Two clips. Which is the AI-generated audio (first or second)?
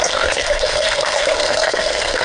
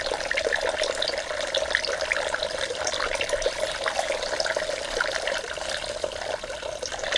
first